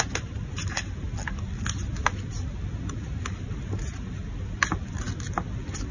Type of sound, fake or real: real